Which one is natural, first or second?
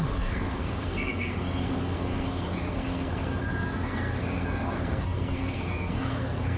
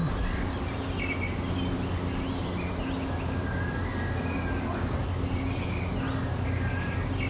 second